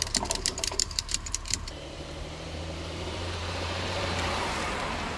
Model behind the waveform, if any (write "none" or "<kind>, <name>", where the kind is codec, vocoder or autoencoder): vocoder, BigVGAN v2